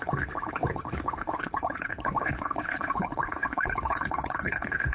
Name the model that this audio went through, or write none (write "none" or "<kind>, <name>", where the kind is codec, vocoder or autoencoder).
codec, HILCodec